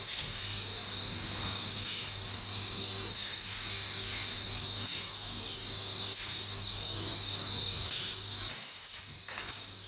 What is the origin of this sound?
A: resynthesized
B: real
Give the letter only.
A